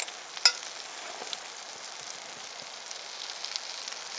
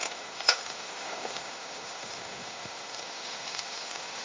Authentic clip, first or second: first